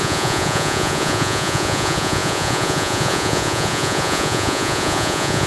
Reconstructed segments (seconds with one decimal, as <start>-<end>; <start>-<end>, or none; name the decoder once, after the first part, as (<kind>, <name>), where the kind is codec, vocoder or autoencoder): 0.0-5.5 (vocoder, Vocos)